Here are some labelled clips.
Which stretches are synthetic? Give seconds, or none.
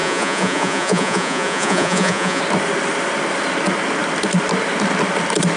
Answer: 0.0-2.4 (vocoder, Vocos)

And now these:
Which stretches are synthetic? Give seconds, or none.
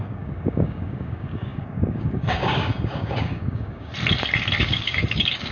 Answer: 0.0-3.9 (codec, DAC); 4.6-5.5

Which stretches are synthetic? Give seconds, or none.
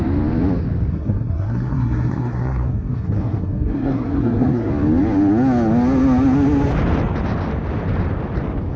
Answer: 0.9-4.7 (codec, SNAC)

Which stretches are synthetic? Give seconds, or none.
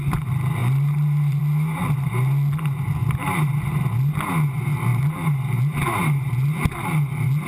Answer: 0.6-1.4 (vocoder, BigVGAN v2); 3.2-3.8; 4.9-6.3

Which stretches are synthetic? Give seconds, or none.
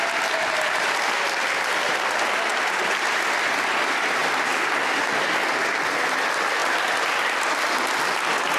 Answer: none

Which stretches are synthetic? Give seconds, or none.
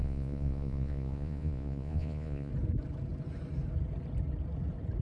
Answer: 0.0-2.5 (vocoder, Vocos)